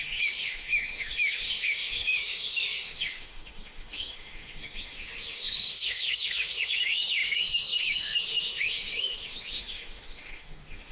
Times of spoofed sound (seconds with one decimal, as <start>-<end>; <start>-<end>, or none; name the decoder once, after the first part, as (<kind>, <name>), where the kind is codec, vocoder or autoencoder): 0.0-10.9 (autoencoder, DAC-VAE)